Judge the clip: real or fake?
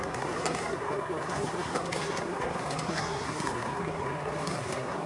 fake